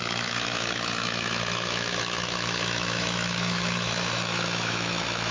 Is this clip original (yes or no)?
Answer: no